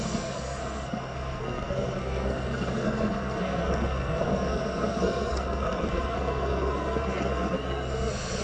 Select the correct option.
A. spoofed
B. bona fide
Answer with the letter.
A